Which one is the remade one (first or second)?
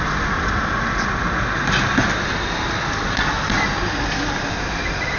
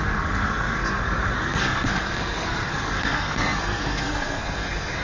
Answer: second